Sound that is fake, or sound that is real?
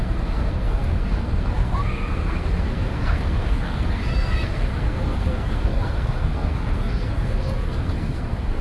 fake